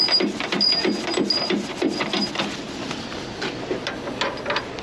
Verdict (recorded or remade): recorded